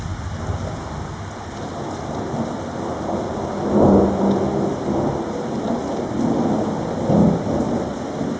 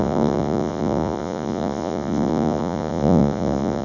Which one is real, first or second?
first